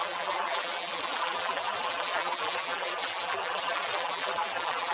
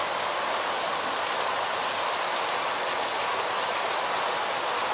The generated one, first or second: first